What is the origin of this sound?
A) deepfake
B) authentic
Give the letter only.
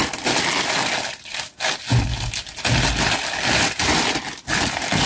B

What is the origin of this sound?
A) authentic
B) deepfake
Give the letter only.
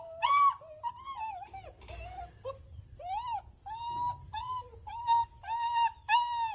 A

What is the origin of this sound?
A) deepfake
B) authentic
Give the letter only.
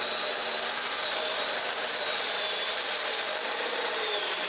A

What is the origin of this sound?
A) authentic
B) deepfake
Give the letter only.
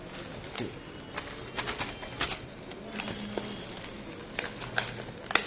A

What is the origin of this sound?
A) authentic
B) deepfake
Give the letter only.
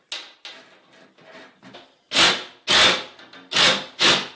A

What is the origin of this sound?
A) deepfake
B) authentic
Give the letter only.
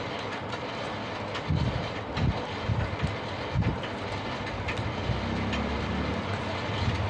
B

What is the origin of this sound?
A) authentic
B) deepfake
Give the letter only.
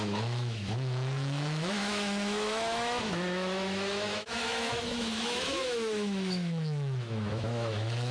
B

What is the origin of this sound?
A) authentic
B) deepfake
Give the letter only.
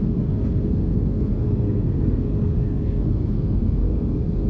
B